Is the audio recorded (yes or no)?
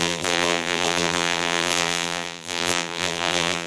no